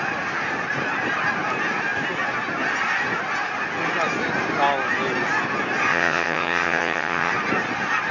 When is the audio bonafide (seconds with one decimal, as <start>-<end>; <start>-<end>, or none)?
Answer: 0.0-5.9; 7.3-8.1